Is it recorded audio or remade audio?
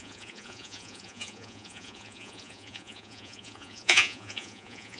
remade